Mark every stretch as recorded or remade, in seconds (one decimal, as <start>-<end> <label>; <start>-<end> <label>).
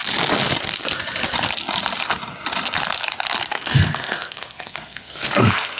0.0-3.5 recorded; 3.5-5.8 remade